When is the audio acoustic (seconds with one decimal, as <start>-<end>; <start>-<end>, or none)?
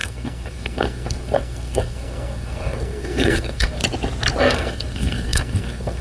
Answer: 3.8-4.4